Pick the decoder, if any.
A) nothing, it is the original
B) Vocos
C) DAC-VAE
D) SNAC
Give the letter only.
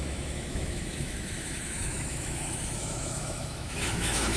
C